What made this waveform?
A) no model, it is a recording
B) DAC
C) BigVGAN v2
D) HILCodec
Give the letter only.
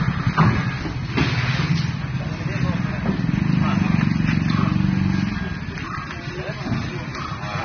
A